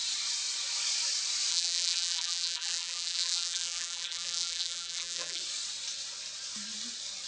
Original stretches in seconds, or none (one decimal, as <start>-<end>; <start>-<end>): 0.0-1.5; 5.4-7.3